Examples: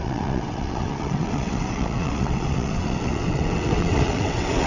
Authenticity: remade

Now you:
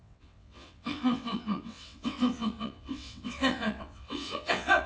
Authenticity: remade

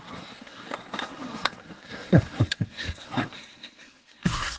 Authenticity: remade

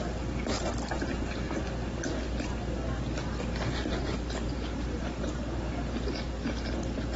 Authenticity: recorded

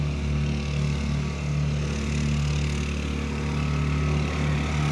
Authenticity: recorded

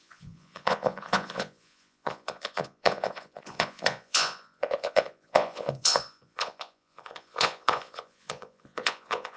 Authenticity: remade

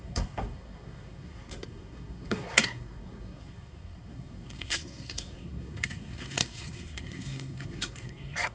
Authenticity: remade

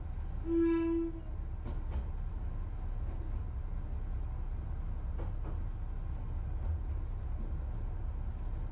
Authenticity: recorded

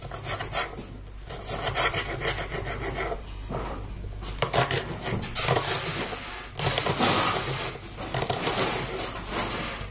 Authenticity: recorded